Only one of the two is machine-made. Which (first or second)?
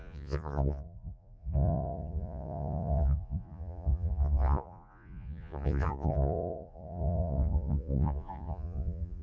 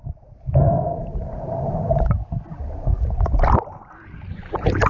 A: first